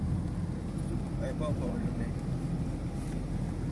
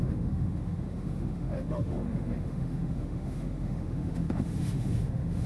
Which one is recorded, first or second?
first